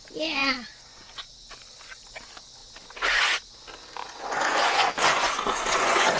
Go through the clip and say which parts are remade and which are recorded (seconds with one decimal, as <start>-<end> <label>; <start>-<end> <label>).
0.0-0.4 recorded; 0.4-1.3 remade; 1.3-4.0 recorded; 4.0-6.2 remade